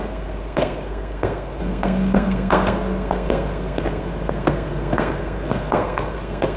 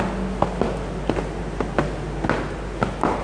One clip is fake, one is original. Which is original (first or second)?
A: second